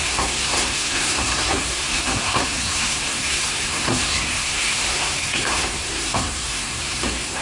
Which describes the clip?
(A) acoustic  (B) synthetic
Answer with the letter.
B